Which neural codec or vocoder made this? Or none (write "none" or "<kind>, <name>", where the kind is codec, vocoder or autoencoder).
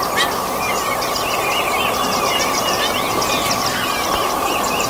none